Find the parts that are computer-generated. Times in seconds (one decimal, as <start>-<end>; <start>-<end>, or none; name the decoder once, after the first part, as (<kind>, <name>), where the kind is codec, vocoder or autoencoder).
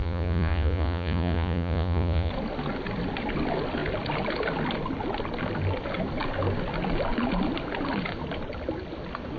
0.0-2.3 (vocoder, Vocos)